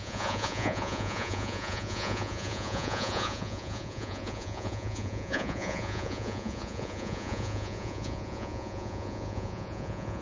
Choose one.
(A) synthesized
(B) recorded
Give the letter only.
A